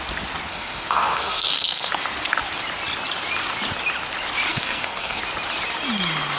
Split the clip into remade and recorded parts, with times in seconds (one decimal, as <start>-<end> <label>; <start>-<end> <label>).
0.0-0.5 recorded; 0.5-1.9 remade; 1.9-4.5 recorded; 4.5-5.2 remade; 5.2-6.4 recorded

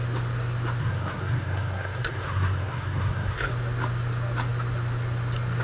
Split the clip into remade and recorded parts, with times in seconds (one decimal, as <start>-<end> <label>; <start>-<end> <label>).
0.0-0.8 recorded; 0.8-3.5 remade; 3.5-5.6 recorded

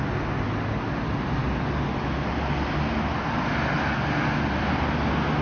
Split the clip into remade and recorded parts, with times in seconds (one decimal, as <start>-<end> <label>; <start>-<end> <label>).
0.0-5.4 recorded